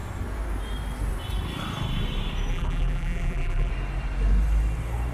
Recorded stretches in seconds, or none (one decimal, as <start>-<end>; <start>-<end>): 0.0-2.5; 3.7-5.1